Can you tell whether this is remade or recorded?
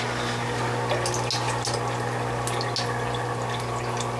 recorded